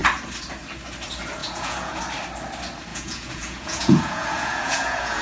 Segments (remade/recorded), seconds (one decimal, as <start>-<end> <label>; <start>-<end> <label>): 0.0-1.4 recorded; 1.4-2.0 remade; 2.0-2.9 recorded; 2.9-5.2 remade